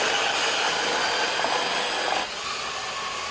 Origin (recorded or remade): recorded